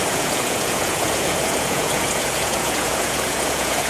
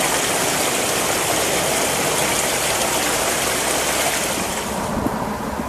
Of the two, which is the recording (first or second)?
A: second